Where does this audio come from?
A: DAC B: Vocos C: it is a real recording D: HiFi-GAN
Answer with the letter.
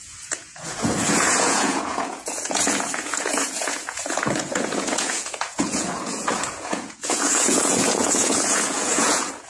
B